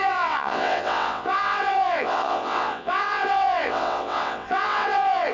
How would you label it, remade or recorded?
remade